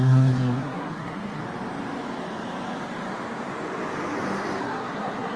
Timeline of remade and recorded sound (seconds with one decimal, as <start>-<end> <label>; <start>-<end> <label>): 0.0-1.4 remade; 1.4-4.6 recorded; 4.6-5.4 remade